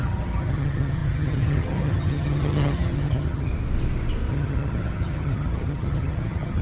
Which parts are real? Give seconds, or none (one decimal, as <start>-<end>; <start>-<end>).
3.5-4.3